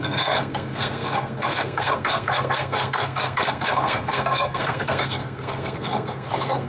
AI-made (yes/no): yes